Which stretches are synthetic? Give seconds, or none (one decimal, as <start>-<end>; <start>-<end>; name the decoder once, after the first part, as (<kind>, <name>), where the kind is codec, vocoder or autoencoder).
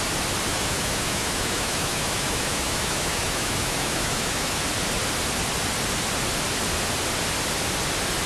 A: 0.5-4.6 (autoencoder, DAC-VAE)